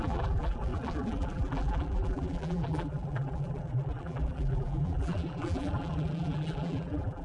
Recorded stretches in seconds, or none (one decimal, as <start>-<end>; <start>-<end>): none